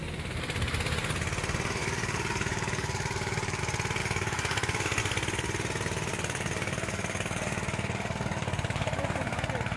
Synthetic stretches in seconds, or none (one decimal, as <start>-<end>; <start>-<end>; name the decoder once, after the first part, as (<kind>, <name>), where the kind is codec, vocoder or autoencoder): 1.8-3.6 (codec, DAC); 4.0-5.0; 6.1-9.4